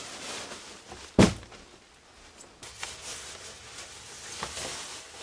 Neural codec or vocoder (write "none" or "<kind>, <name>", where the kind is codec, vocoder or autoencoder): none